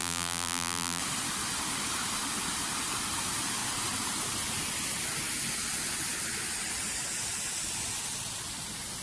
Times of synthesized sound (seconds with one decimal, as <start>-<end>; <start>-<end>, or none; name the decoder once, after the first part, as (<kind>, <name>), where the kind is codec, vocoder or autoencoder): 0.0-1.0 (vocoder, BigVGAN v2)